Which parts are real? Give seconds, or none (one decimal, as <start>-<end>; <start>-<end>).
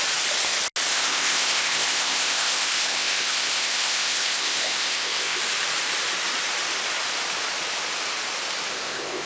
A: 0.0-0.9; 5.4-8.7